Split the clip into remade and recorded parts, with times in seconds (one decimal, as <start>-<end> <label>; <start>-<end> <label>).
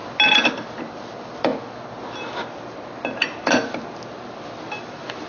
0.0-5.3 recorded